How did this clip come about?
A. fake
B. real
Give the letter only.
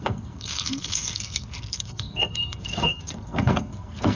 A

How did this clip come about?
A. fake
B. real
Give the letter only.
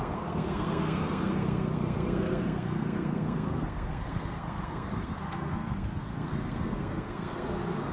A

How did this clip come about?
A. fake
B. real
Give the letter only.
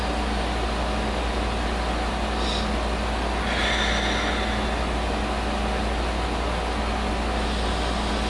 B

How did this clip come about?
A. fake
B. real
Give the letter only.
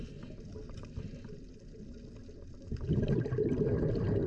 B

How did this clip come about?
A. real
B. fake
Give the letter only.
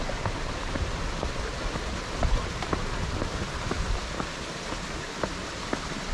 A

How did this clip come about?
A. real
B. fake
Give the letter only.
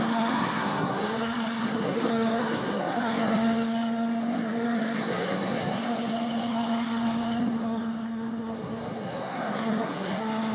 B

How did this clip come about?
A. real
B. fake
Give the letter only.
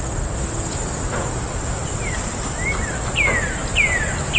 A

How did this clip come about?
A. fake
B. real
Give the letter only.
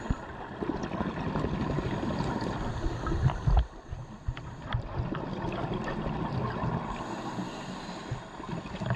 B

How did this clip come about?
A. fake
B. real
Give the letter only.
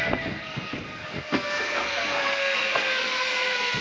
A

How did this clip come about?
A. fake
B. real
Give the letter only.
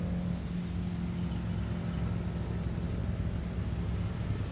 B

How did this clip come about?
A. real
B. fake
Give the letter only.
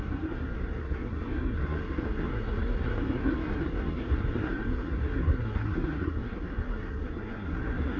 B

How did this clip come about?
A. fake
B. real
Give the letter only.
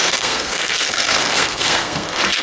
A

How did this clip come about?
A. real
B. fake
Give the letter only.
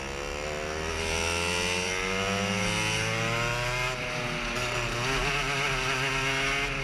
A